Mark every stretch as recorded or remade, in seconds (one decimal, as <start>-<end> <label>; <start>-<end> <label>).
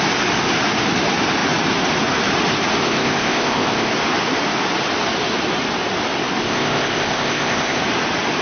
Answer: 0.0-2.8 recorded; 2.8-3.9 remade; 3.9-6.4 recorded; 6.4-7.8 remade; 7.8-8.4 recorded